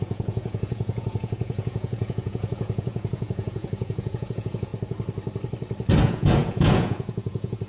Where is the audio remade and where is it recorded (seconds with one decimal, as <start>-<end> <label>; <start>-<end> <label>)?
0.0-4.7 remade; 4.7-6.0 recorded; 6.0-7.7 remade